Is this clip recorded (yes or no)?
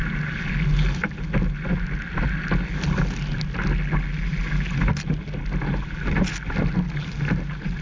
yes